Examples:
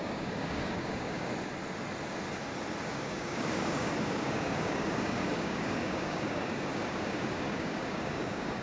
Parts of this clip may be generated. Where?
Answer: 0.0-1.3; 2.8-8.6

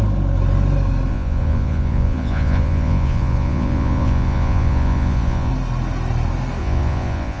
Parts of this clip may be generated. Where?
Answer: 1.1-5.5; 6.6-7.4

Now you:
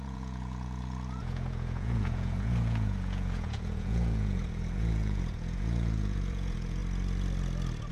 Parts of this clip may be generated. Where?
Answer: 0.0-6.8